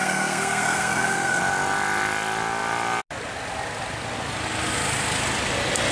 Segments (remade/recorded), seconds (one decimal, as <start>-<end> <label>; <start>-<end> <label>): 0.0-1.4 remade; 1.4-5.9 recorded